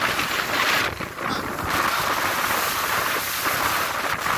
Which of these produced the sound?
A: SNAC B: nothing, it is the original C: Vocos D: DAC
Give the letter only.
B